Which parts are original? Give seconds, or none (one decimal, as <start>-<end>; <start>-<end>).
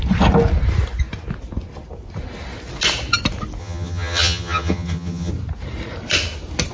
0.0-3.6; 5.3-6.7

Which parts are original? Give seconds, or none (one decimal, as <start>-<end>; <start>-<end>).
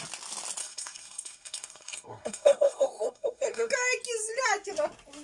0.0-0.6; 3.7-5.2